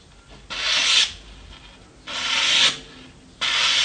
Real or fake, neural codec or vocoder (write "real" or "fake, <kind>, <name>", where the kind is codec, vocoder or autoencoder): real